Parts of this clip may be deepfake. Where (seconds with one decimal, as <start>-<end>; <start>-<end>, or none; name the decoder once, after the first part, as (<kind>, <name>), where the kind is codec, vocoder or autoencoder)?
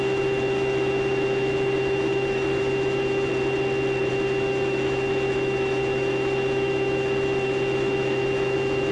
0.0-3.3 (autoencoder, DAC-VAE); 4.1-8.9